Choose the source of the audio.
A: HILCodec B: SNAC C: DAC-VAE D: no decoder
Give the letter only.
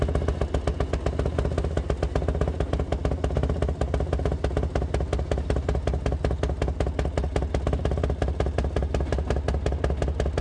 D